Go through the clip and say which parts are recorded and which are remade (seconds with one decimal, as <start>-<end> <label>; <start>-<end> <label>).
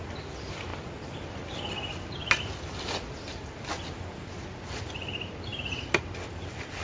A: 0.0-6.8 recorded